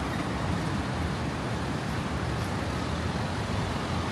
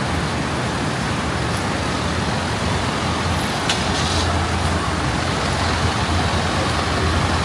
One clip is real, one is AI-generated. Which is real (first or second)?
second